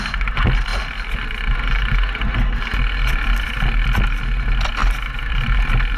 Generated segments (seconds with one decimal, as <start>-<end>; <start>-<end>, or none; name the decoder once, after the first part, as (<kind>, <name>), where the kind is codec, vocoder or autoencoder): none